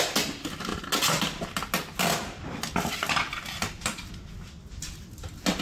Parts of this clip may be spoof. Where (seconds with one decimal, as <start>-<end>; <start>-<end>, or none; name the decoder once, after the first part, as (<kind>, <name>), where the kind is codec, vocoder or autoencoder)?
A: none